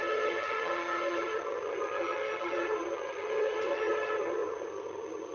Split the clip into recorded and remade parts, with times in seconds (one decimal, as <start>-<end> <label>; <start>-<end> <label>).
0.0-5.3 remade